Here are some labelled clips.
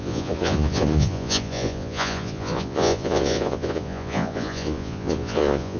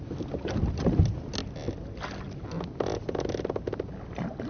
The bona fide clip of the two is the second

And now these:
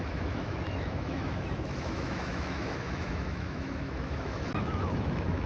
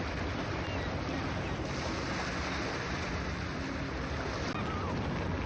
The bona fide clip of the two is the second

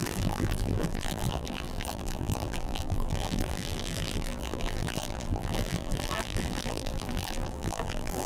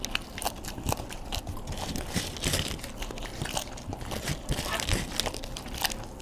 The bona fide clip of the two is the second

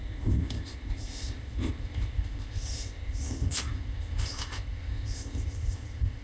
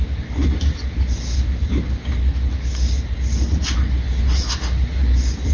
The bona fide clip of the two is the second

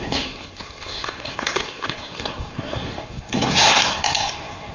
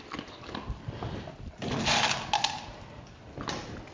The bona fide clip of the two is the second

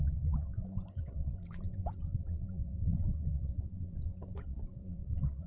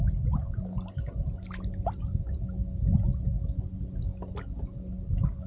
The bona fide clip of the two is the second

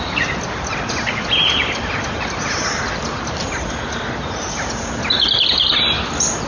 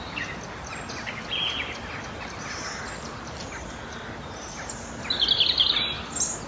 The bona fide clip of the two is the second